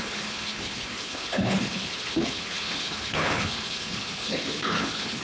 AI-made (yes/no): yes